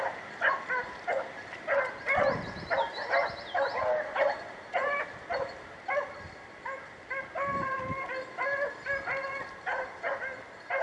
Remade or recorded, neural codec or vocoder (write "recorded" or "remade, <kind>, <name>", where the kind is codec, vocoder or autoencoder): recorded